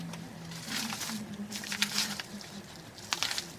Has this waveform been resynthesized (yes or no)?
no